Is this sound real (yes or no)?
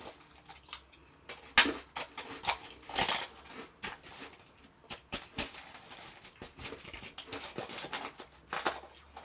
yes